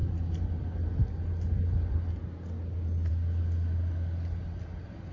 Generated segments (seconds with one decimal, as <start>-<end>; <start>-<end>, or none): none